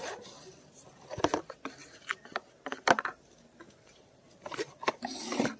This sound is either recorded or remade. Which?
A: recorded